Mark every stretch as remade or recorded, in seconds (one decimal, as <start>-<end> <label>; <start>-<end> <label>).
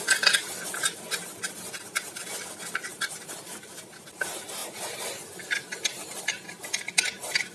0.0-2.9 recorded; 2.9-3.7 remade; 3.7-7.5 recorded